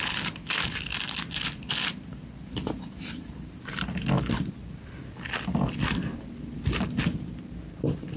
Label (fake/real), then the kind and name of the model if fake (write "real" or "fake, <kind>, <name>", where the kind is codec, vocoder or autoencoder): real